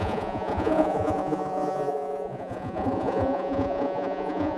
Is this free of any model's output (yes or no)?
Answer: no